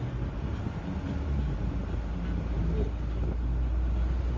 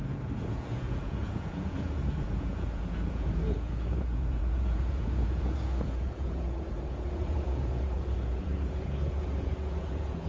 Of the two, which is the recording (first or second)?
first